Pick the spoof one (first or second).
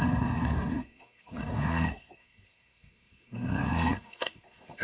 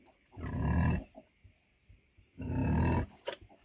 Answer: first